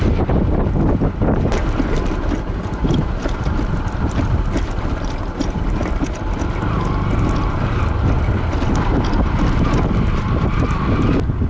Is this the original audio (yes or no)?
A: yes